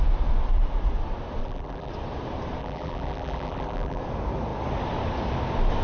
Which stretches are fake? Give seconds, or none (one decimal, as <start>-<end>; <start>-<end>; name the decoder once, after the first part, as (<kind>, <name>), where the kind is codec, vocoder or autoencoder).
1.4-1.9 (vocoder, BigVGAN v2); 2.6-4.0